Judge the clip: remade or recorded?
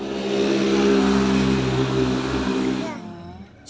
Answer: recorded